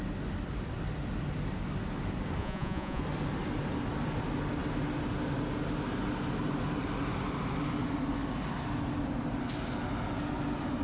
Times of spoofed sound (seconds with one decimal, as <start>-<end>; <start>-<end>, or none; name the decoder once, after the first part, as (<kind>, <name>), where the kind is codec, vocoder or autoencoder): 2.4-3.0 (vocoder, Vocos)